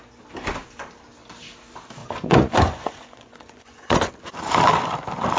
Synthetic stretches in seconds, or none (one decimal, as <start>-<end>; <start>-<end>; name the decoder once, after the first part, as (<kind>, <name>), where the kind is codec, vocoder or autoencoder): 2.0-4.1 (vocoder, Vocos)